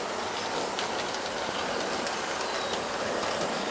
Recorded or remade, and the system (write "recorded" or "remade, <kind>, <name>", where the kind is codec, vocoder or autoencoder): recorded